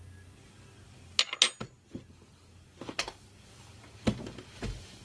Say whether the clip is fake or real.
real